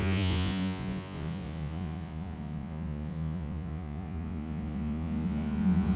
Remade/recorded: remade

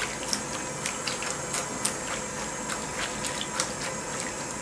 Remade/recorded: recorded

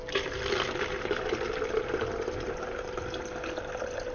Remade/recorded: recorded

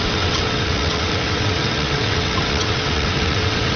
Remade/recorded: remade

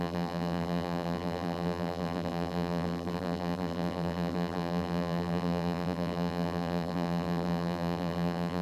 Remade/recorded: remade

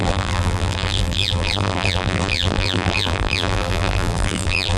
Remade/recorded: remade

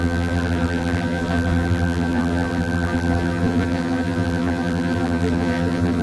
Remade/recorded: remade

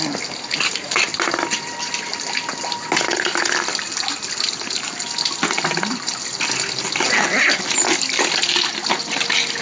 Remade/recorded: recorded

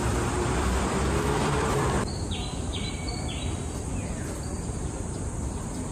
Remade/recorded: remade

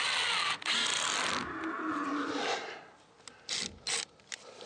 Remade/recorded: recorded